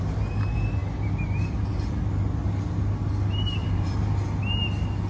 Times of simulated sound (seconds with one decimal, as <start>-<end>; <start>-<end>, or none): 3.6-4.1